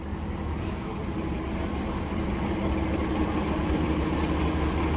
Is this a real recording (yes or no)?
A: yes